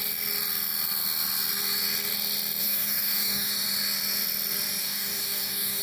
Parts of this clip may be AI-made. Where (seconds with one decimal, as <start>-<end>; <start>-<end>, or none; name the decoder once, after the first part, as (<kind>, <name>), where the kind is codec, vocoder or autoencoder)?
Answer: 2.6-3.5 (codec, DAC); 4.8-5.8

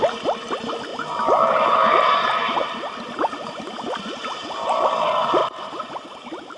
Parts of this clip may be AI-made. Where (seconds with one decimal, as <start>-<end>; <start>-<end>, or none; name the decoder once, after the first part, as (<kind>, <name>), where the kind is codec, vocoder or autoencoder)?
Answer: 0.9-3.7 (vocoder, BigVGAN v2)